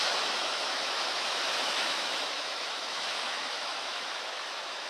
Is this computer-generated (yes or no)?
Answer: yes